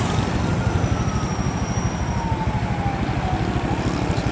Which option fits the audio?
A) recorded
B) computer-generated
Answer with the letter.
A